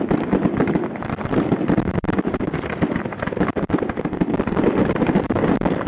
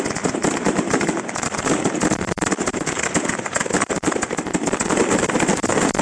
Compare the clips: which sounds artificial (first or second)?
first